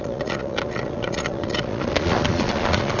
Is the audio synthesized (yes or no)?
yes